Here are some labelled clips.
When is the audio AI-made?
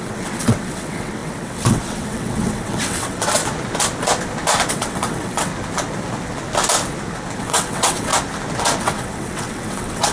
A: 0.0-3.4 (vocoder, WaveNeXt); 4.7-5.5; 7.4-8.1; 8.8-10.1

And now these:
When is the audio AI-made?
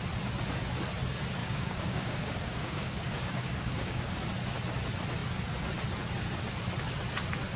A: 1.4-4.1 (codec, DAC)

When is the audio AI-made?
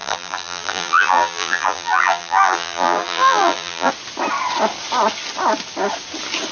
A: 0.0-3.9 (vocoder, BigVGAN v2)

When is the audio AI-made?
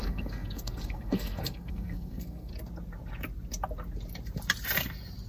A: 0.0-2.5 (codec, SNAC)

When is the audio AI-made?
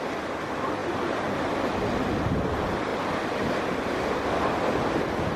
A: none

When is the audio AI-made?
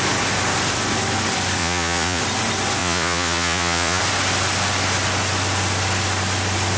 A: 1.6-2.2 (vocoder, Vocos); 2.8-4.0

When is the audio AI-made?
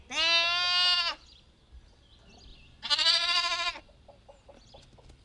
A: 2.5-3.8 (vocoder, Vocos)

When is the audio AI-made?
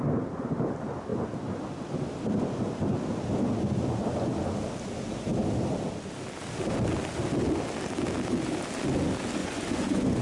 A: 9.4-10.2 (vocoder, Vocos)